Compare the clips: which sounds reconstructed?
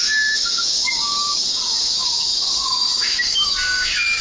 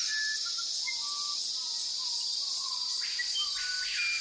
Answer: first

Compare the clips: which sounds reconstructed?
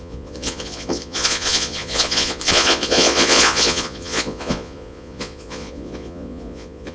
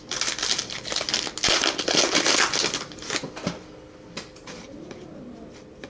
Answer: first